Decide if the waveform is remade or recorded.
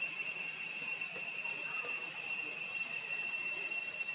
remade